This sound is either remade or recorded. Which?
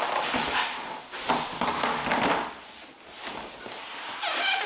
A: recorded